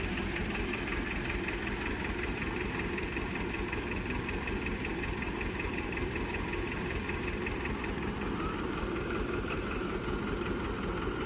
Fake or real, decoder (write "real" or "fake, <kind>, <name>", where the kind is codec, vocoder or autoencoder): fake, vocoder, BigVGAN v2